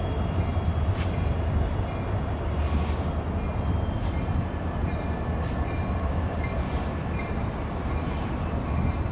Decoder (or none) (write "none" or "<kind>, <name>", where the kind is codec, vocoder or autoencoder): none